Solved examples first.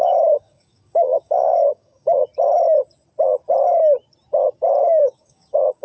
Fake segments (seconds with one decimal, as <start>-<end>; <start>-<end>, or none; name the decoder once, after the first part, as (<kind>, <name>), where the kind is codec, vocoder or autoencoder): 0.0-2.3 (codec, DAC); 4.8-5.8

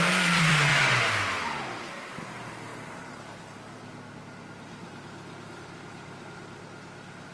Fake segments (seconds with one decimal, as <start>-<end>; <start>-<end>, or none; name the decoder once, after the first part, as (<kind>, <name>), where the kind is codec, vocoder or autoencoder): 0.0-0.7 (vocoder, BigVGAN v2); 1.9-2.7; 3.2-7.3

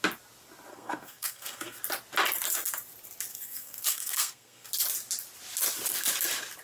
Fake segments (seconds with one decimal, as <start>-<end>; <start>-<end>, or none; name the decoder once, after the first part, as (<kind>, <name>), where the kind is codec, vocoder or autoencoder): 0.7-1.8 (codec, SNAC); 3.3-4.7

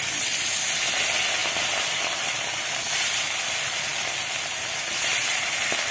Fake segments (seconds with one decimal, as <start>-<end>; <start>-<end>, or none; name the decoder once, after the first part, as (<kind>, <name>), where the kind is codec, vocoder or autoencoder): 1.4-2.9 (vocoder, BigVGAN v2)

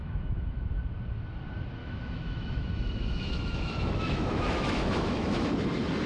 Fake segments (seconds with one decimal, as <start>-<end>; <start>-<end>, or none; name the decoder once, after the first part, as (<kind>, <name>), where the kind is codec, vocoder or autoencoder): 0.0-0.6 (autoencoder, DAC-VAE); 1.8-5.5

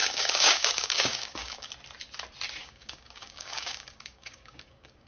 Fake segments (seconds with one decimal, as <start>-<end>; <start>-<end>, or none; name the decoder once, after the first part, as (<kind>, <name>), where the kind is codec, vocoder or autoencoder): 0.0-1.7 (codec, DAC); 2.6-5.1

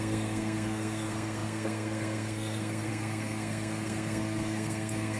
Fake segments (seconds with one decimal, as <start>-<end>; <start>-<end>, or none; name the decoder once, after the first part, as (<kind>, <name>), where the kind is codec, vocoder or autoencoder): 0.0-5.2 (codec, SNAC)

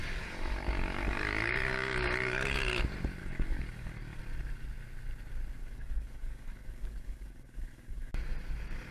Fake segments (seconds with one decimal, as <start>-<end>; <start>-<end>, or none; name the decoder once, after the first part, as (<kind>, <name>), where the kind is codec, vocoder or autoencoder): 0.0-2.8 (codec, DAC); 3.2-4.2; 5.6-8.1